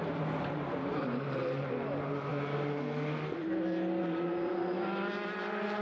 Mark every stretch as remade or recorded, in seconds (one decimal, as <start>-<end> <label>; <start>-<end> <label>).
0.0-2.3 remade; 2.3-4.0 recorded; 4.0-5.8 remade